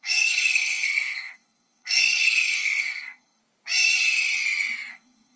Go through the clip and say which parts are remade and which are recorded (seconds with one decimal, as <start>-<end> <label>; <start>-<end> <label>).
0.0-3.4 remade; 3.4-4.9 recorded; 4.9-5.4 remade